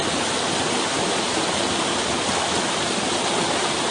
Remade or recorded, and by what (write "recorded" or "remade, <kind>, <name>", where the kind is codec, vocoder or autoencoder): recorded